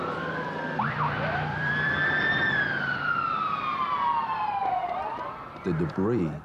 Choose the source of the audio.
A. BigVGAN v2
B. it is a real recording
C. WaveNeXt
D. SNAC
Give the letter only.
A